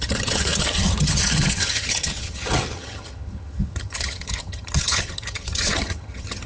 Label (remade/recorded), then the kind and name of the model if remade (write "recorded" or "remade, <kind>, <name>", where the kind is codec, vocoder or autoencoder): remade, vocoder, HiFi-GAN